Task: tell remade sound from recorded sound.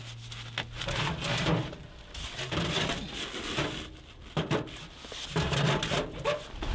recorded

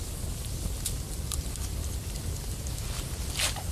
recorded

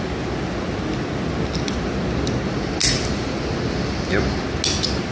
recorded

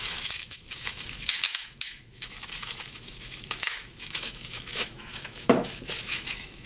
remade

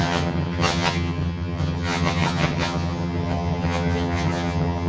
remade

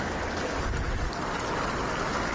recorded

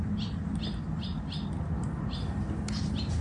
recorded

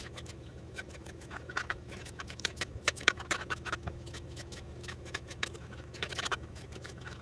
remade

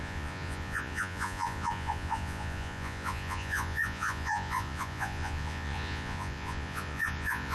remade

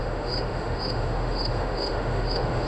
remade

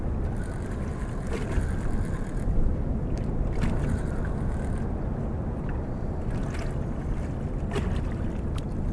recorded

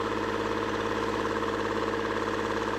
recorded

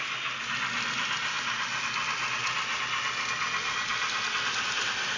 recorded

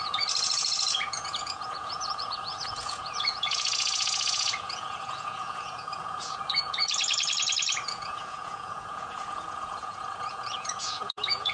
remade